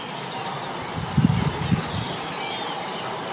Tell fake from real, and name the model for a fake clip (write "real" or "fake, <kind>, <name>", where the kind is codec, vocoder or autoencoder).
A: real